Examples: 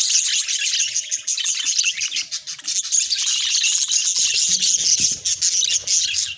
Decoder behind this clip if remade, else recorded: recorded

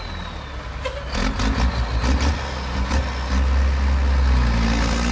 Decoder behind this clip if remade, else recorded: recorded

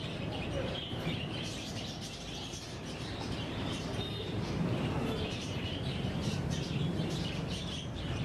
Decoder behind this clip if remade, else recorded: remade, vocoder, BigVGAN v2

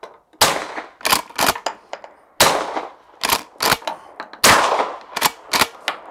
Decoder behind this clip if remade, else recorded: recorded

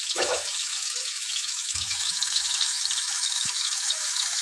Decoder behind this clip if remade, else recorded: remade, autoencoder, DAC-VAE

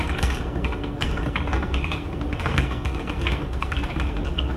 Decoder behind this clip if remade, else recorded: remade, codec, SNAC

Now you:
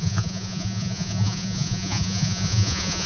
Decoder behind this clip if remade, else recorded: remade, vocoder, Vocos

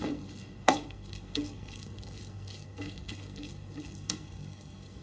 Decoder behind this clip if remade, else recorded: remade, codec, SNAC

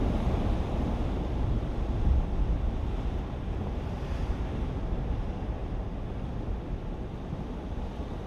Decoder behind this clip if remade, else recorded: recorded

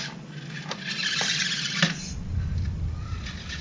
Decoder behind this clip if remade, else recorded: recorded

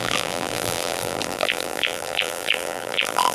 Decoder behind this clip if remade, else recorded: remade, vocoder, BigVGAN v2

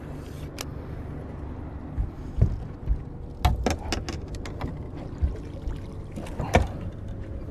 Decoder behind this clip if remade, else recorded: recorded